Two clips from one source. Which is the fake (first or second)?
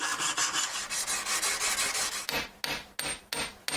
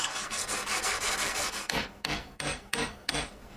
second